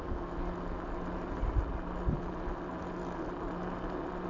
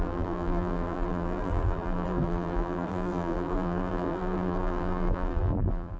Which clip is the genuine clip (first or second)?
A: first